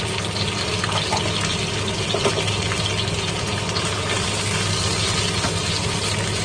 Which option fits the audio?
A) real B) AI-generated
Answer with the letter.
A